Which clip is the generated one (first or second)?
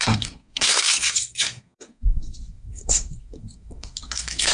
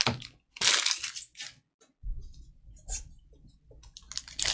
first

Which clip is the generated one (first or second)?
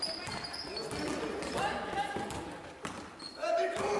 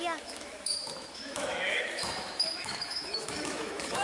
second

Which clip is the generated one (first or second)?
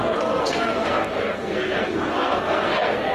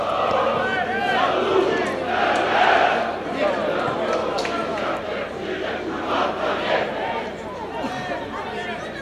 first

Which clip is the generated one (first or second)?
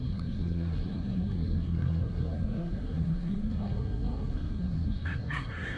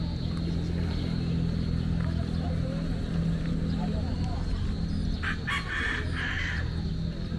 first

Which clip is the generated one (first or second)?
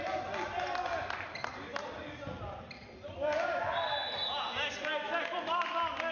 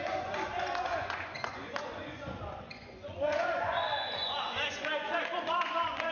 second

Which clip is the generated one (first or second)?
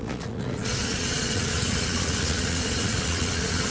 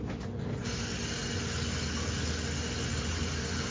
first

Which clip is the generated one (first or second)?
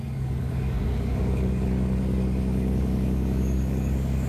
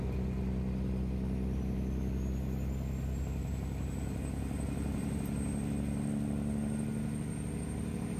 first